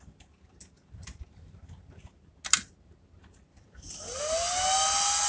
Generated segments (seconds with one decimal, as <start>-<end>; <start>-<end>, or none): none